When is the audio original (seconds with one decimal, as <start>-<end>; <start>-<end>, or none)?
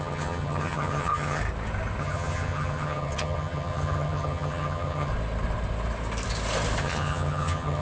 1.4-2.0; 5.1-6.8